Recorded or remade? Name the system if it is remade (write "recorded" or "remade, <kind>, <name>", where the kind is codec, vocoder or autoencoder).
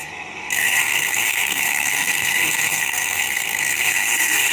remade, codec, SNAC